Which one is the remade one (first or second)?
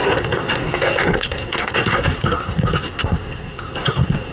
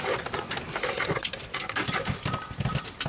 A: first